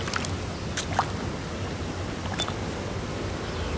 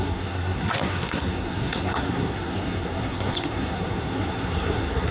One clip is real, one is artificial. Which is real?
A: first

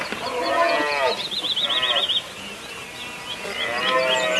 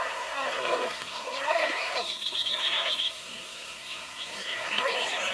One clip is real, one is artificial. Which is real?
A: first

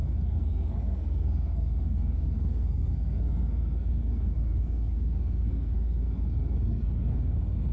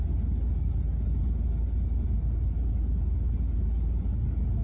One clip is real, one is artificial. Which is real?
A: second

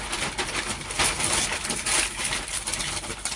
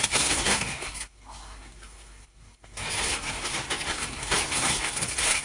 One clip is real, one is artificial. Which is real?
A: first